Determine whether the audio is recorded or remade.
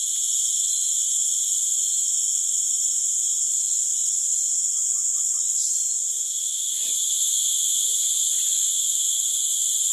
recorded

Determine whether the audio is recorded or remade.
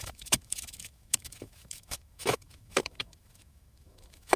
remade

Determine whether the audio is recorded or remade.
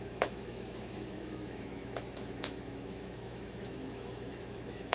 remade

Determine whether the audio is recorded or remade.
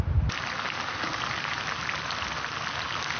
recorded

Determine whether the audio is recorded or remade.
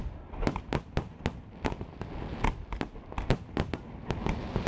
recorded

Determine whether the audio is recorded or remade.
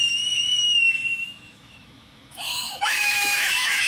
remade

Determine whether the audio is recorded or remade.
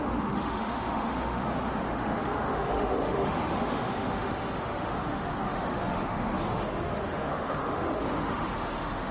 remade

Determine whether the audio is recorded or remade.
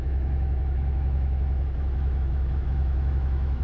remade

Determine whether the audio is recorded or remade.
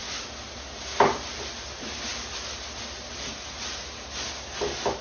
recorded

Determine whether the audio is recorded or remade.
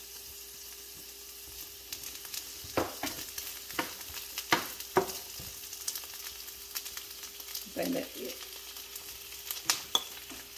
recorded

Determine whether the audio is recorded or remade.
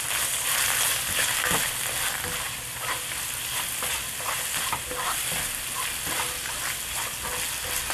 recorded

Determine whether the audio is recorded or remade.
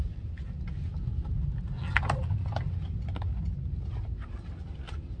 recorded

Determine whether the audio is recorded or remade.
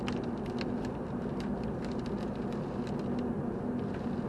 recorded